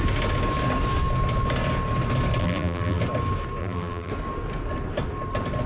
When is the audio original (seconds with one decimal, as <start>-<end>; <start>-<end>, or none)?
0.0-2.4; 3.0-3.6; 4.1-5.7